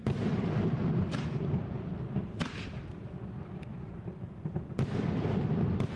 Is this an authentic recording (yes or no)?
yes